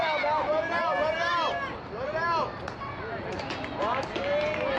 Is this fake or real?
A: real